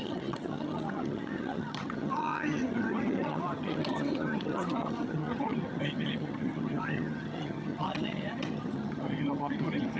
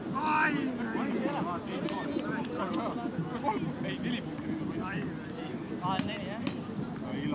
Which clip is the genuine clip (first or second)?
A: second